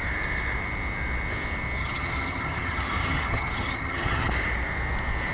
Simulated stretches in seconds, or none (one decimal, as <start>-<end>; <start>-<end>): 1.8-4.3